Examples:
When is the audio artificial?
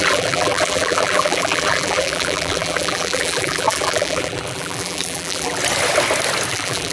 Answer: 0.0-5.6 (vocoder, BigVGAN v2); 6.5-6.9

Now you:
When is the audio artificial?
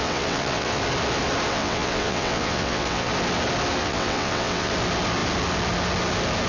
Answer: 0.0-0.8 (vocoder, WaveNeXt); 1.5-3.1; 3.8-4.7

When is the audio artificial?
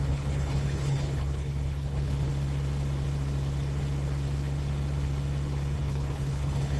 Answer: 0.0-2.3 (codec, HILCodec); 5.8-6.8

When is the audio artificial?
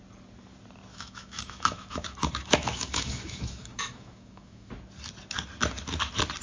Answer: 0.9-4.7 (autoencoder, DAC-VAE)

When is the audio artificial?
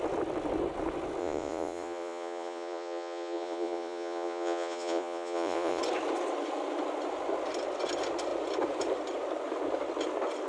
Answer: 1.2-5.8 (vocoder, Vocos)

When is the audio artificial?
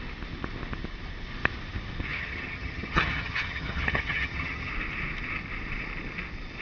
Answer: 2.1-4.7 (vocoder, HiFi-GAN)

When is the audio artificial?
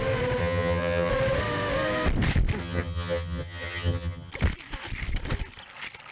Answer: 0.4-1.1 (vocoder, HiFi-GAN); 2.6-4.3